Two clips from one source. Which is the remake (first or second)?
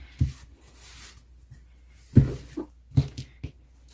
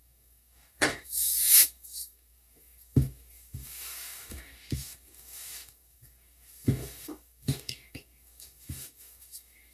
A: second